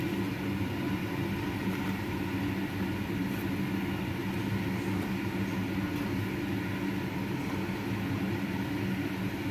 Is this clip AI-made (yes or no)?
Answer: no